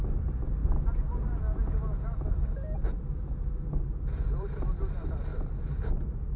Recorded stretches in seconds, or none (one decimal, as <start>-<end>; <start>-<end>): 0.6-4.1; 5.3-6.0